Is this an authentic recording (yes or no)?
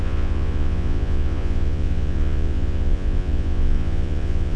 no